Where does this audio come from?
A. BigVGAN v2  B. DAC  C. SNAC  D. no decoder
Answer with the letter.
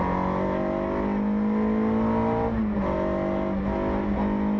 D